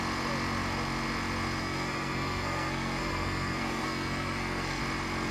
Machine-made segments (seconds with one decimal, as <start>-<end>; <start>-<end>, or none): 1.6-4.8